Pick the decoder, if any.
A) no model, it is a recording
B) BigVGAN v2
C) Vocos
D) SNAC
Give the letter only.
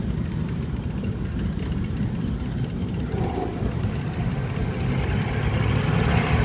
A